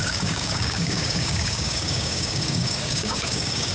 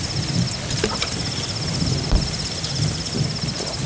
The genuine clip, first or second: second